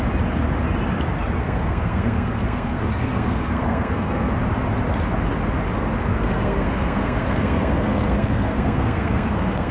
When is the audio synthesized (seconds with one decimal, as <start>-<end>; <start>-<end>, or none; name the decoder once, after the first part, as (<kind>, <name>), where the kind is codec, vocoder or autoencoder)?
1.4-4.3 (codec, SNAC); 6.1-9.7

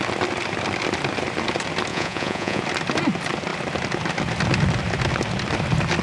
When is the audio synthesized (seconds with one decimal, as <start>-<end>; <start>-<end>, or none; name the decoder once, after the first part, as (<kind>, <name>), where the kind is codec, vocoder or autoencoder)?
1.9-2.6 (vocoder, Vocos)

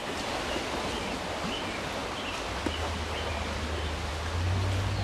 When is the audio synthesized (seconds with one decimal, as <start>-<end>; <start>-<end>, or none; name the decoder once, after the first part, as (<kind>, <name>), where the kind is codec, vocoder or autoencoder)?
none

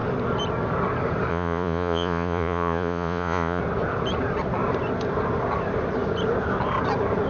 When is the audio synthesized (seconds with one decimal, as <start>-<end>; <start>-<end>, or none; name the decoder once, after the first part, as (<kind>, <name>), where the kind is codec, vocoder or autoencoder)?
1.3-3.6 (vocoder, Vocos)